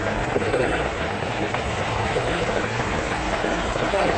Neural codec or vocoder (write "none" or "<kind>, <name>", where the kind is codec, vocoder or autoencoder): codec, SNAC